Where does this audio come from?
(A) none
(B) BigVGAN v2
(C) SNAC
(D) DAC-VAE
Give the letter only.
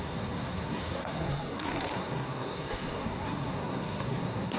C